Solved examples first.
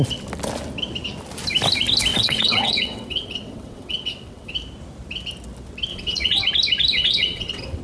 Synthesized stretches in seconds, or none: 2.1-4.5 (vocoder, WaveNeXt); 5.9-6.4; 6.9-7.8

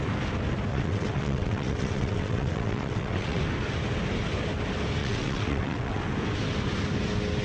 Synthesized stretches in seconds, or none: 0.7-3.4 (vocoder, WaveNeXt); 5.0-6.0

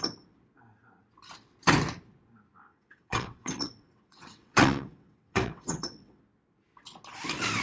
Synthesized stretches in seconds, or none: 2.7-6.2 (vocoder, WaveNeXt)

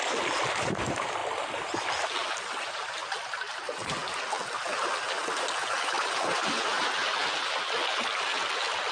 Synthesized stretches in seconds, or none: none

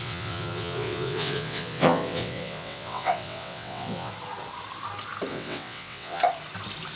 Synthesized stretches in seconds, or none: 0.0-4.1 (vocoder, WaveNeXt); 5.3-6.2